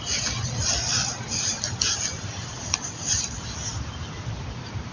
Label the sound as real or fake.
real